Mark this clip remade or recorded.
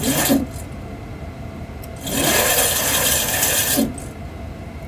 recorded